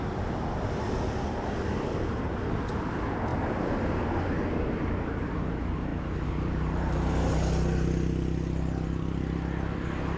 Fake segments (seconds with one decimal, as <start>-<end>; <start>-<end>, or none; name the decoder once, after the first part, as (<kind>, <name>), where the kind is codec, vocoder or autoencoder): none